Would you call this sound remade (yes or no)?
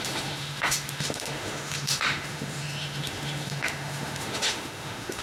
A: yes